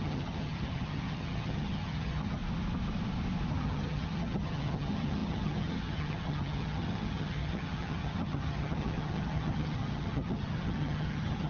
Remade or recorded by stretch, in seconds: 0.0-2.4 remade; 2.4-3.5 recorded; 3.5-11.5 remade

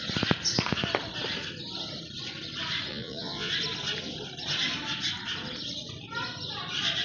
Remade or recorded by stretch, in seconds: 0.0-2.9 recorded; 2.9-3.5 remade; 3.5-7.0 recorded

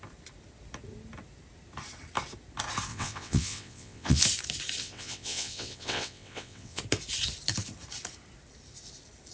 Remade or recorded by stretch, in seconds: 0.0-2.9 recorded; 2.9-4.2 remade; 4.2-4.8 recorded; 4.8-6.8 remade; 6.8-9.3 recorded

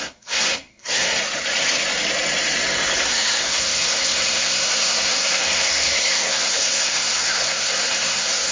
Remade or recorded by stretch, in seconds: 0.0-1.2 remade; 1.2-3.0 recorded; 3.0-8.5 remade

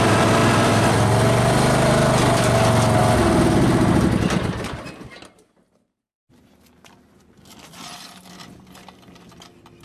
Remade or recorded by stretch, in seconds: 0.0-9.8 recorded